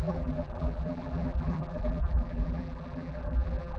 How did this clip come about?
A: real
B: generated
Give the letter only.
B